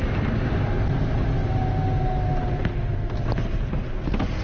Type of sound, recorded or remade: recorded